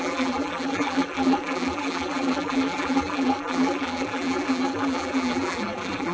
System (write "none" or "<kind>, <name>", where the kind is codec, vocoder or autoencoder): vocoder, BigVGAN v2